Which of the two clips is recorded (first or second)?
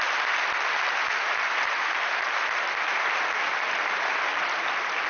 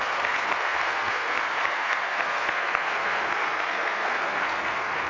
first